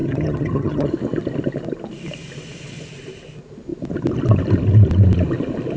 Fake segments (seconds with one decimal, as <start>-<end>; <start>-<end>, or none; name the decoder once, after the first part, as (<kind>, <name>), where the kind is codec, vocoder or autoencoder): 0.0-0.9 (vocoder, HiFi-GAN)